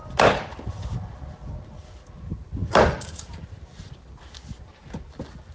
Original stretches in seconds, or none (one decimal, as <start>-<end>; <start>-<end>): 0.0-5.5